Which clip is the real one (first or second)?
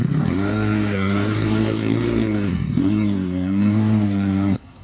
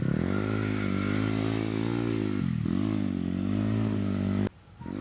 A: second